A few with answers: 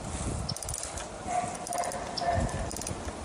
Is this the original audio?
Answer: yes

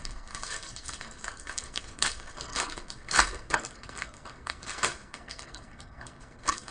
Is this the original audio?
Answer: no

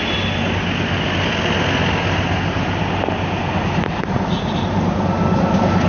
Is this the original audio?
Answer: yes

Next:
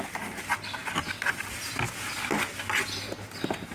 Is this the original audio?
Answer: yes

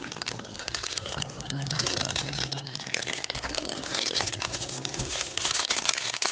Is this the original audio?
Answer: no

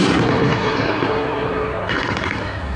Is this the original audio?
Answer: no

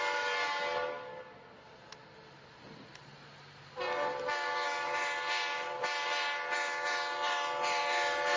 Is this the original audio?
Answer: yes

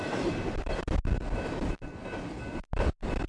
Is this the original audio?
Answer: yes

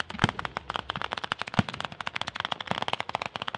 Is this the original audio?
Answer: yes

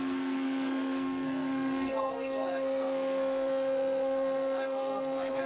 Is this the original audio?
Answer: no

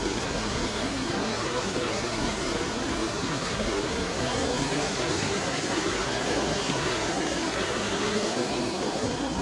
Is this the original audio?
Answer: no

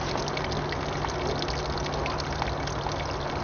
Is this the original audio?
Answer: yes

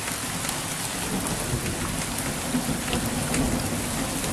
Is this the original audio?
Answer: yes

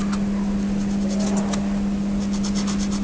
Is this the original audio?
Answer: yes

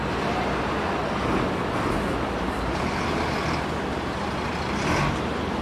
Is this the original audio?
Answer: yes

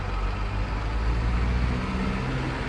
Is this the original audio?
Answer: yes